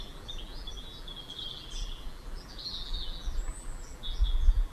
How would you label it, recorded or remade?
remade